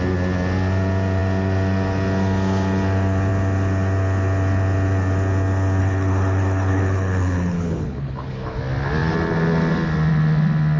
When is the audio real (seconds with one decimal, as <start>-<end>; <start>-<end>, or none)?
0.0-5.8; 8.6-10.8